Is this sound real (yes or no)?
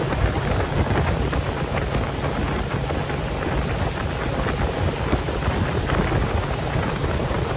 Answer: yes